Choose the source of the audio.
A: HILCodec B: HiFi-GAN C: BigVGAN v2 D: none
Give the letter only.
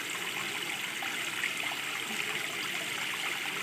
D